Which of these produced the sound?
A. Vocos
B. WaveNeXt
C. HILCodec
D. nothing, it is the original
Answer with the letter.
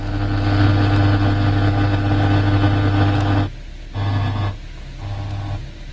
D